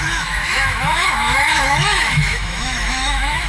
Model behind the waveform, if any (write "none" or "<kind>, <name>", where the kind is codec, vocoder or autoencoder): autoencoder, DAC-VAE